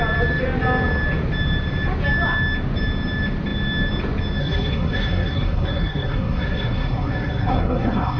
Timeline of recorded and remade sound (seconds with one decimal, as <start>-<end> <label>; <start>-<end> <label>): 0.0-4.4 recorded; 4.4-8.2 remade